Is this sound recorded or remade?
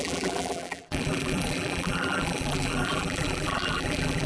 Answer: remade